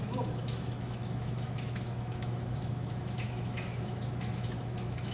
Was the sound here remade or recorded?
remade